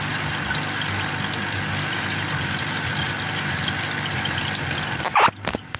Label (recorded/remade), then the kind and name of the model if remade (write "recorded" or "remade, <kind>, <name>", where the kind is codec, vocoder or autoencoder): recorded